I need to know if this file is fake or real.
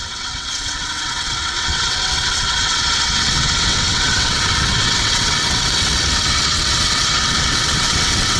fake